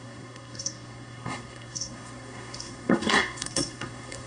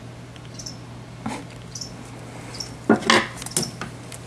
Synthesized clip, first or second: first